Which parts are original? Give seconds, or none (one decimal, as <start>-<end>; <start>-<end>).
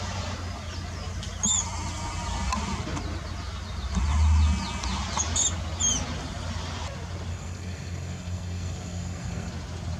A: 0.0-7.3; 9.5-10.0